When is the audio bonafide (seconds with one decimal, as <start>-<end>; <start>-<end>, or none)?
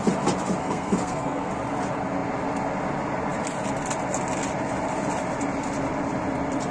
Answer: 0.0-0.6; 1.5-6.7